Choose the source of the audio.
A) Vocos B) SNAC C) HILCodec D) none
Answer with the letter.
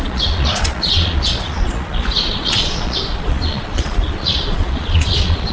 A